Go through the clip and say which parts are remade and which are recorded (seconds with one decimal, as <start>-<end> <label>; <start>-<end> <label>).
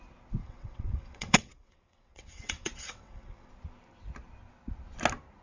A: 0.0-0.4 recorded; 0.4-3.5 remade; 3.5-5.4 recorded